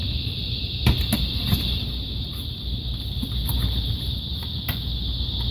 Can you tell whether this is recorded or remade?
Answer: recorded